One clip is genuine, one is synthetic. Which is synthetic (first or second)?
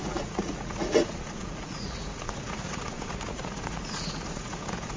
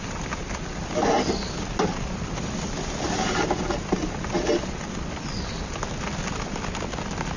first